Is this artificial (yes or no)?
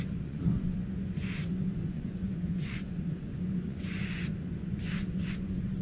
yes